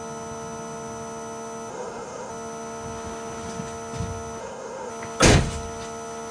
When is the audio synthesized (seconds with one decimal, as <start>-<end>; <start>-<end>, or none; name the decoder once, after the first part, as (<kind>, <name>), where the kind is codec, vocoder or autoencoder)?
1.7-2.3 (codec, SNAC); 4.4-4.9